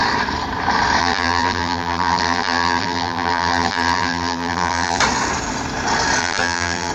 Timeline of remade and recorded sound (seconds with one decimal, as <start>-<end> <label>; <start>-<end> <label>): 0.0-1.0 recorded; 1.0-5.0 remade; 5.0-6.2 recorded; 6.2-6.9 remade